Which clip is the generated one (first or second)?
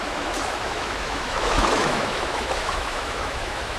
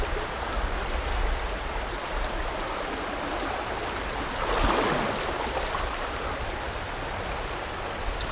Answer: first